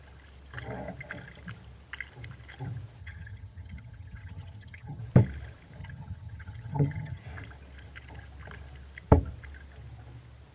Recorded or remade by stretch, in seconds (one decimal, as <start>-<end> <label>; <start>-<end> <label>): 0.0-3.0 recorded; 3.0-5.0 remade; 5.0-5.8 recorded; 5.8-7.2 remade; 7.2-10.5 recorded